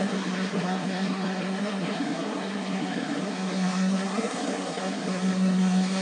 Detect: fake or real fake